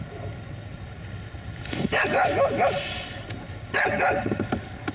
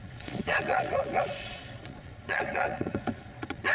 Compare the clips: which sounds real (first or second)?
first